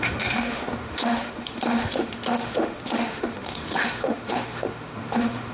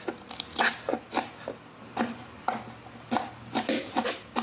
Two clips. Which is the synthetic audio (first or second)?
first